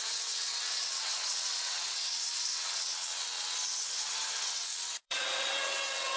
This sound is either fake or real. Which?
fake